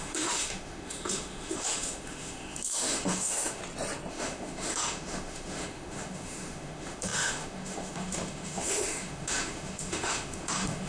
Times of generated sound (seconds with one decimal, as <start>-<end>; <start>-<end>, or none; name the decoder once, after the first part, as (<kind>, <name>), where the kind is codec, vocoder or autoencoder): 0.0-3.6 (autoencoder, DAC-VAE); 4.1-10.9